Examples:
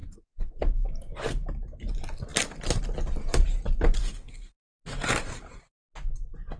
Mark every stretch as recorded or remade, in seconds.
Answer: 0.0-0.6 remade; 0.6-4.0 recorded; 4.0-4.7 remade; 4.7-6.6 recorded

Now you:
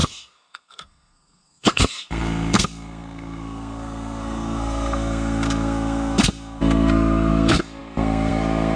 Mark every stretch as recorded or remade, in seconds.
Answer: 0.0-8.8 remade

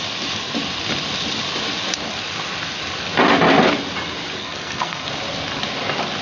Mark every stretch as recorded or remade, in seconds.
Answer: 0.0-4.4 recorded; 4.4-5.1 remade; 5.1-6.2 recorded